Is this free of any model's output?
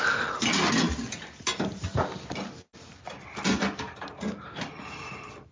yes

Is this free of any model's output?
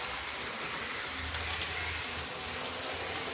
yes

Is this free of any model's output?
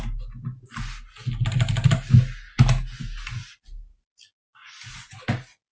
yes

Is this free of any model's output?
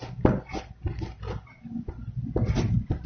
yes